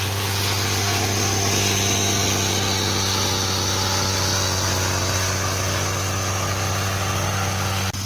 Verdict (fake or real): real